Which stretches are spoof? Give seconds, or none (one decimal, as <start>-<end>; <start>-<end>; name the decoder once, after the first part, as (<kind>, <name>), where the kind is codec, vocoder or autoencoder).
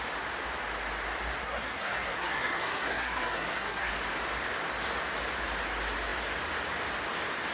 1.4-3.9 (codec, SNAC)